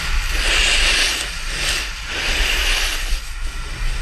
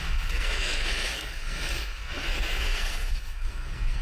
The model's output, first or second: second